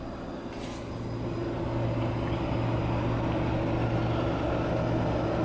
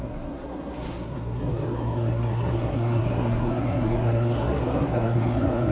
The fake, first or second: second